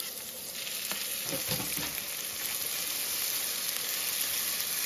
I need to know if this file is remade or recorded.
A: recorded